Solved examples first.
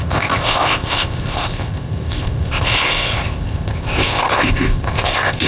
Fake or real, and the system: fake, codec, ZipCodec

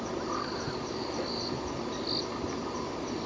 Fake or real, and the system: real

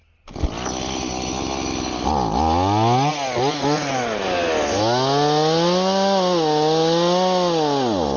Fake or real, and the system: real